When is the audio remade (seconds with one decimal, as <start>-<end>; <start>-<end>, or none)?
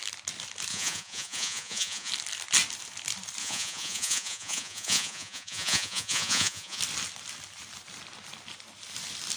0.7-2.1; 3.4-6.8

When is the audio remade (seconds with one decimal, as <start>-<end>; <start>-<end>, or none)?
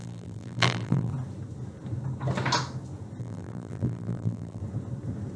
0.0-1.1; 3.2-4.6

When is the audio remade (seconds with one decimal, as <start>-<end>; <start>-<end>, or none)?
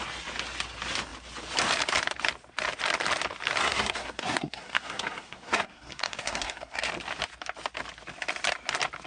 3.6-6.9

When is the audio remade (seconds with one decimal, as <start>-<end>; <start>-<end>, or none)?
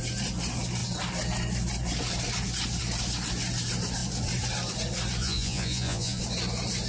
5.2-6.2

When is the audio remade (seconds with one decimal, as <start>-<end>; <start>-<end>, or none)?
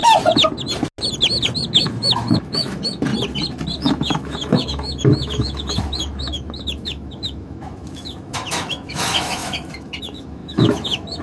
1.7-3.1; 3.8-11.2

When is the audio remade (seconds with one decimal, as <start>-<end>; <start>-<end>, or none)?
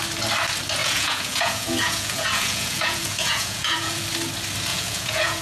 0.8-4.0; 4.7-5.4